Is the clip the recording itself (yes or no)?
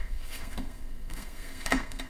no